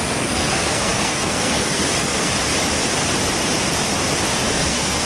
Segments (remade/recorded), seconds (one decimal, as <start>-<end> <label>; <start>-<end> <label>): 0.0-2.3 remade; 2.3-4.5 recorded; 4.5-5.1 remade